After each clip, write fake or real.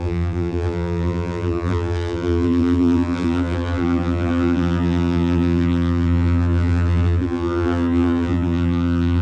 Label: fake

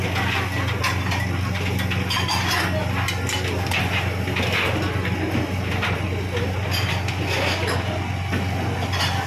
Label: real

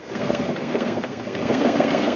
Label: fake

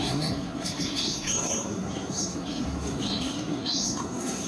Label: fake